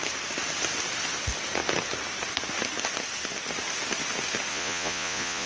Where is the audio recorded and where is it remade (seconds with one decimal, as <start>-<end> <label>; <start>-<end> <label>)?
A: 0.0-4.5 recorded; 4.5-5.5 remade